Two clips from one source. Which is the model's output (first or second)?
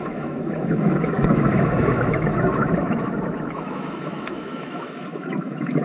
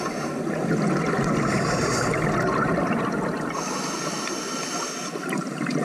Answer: first